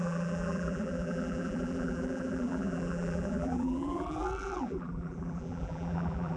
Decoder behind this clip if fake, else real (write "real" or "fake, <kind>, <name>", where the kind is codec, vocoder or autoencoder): fake, vocoder, BigVGAN v2